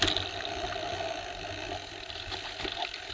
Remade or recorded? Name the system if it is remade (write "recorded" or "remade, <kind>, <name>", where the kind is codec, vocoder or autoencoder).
recorded